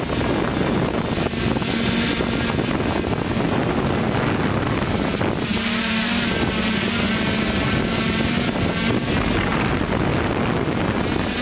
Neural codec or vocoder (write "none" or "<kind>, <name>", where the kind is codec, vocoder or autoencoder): none